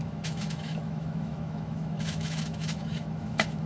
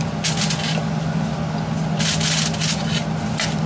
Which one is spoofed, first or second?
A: first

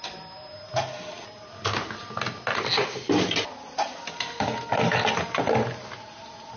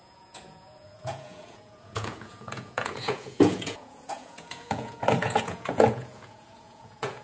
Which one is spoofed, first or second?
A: second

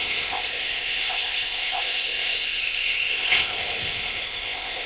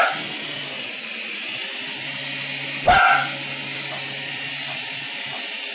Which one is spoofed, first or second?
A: first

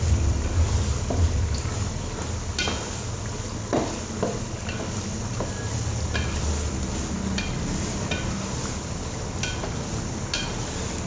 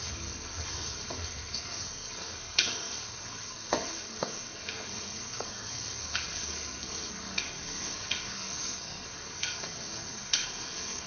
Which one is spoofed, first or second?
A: second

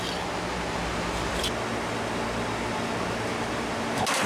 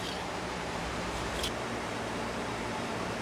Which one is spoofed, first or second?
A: second